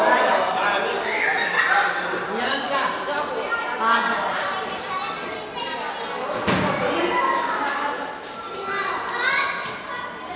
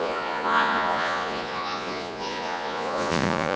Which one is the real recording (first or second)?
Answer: first